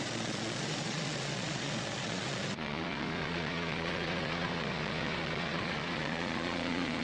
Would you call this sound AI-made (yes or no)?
yes